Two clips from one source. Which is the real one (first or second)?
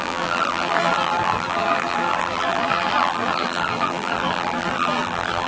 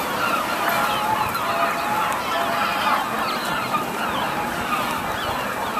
second